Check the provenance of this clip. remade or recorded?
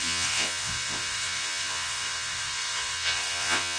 remade